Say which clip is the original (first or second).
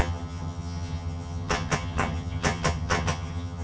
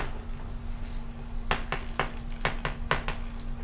second